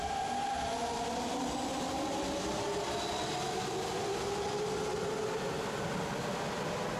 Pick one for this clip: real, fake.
real